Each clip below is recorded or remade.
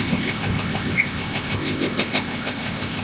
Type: remade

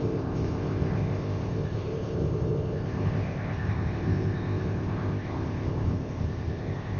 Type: remade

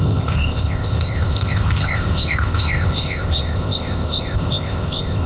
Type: remade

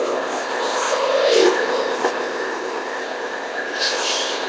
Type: remade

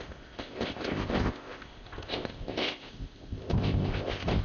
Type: remade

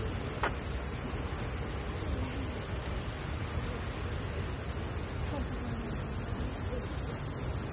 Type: recorded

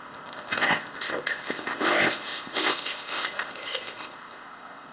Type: remade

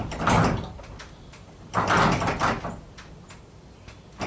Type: recorded